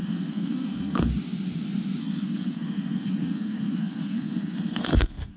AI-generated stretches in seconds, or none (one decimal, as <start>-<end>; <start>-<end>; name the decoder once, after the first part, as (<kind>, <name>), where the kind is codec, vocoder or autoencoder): 0.0-1.1 (codec, SNAC); 2.0-5.4